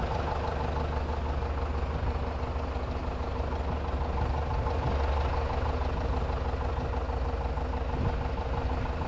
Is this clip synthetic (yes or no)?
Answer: no